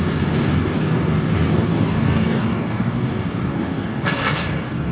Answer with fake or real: fake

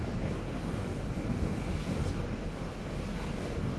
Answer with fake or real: fake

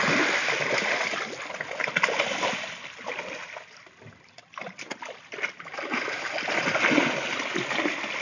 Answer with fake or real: real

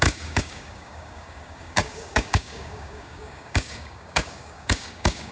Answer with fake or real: fake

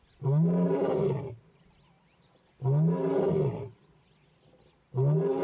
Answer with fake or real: real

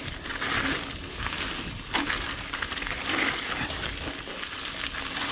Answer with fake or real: real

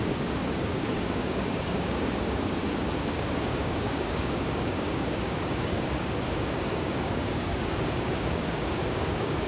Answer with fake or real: fake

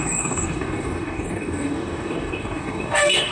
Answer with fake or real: fake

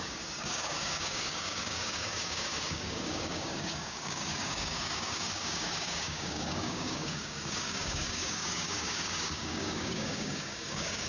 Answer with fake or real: fake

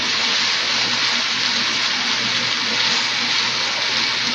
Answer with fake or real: real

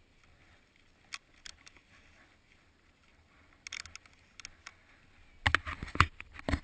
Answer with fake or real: real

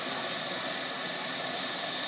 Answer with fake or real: real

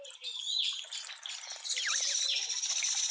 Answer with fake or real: real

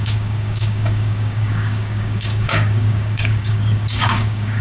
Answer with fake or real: fake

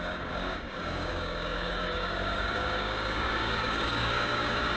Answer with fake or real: fake